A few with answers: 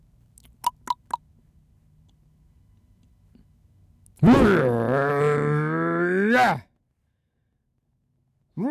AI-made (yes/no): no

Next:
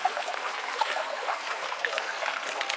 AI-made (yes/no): yes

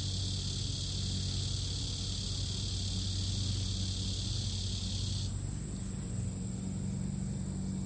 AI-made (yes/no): no